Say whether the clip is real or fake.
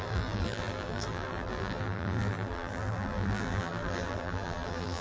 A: fake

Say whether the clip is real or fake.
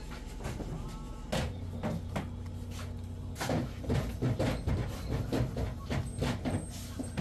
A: real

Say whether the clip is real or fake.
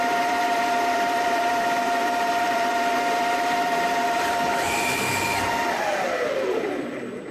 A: fake